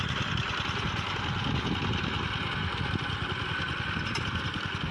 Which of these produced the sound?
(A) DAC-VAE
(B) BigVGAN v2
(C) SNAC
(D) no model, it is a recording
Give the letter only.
D